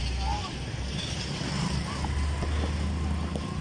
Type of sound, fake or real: real